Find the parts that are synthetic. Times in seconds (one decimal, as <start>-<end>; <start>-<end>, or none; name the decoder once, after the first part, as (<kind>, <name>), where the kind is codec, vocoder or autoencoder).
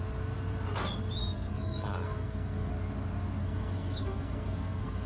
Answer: 1.2-2.7 (codec, SNAC); 3.4-5.1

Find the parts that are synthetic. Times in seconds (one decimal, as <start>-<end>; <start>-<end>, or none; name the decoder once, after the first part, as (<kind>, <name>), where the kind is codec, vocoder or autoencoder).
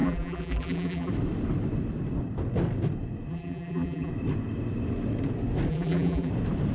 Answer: 0.0-1.1 (vocoder, BigVGAN v2); 3.3-4.1; 5.7-6.3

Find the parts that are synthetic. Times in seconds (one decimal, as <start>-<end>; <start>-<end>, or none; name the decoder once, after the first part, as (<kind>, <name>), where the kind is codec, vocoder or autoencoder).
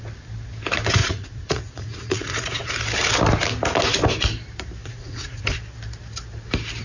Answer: 1.0-2.7 (vocoder, Vocos); 4.8-5.4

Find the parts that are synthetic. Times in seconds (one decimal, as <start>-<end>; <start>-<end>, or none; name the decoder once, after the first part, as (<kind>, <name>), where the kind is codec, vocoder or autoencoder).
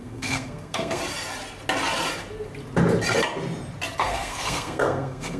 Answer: 0.0-1.0 (codec, SNAC); 4.0-5.4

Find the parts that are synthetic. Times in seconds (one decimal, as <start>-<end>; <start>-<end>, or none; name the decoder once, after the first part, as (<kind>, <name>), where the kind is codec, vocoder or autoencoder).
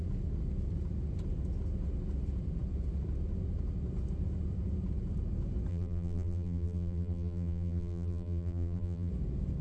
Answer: 5.7-9.1 (vocoder, BigVGAN v2)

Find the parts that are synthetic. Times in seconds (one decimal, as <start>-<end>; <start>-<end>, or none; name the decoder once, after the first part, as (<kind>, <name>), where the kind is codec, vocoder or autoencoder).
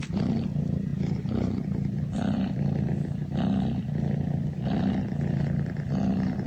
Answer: none